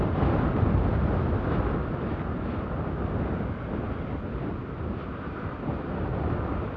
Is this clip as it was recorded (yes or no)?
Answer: yes